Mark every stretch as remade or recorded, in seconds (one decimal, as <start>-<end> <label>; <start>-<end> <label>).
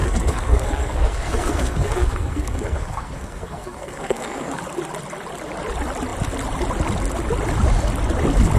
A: 0.0-4.6 remade; 4.6-8.6 recorded